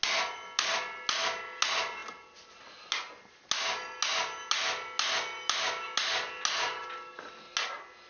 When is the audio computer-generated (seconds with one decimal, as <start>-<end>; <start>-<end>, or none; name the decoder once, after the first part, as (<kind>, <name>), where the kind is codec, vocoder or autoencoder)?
none